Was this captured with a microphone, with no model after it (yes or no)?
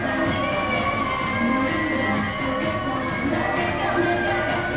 yes